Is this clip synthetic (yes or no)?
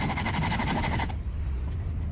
no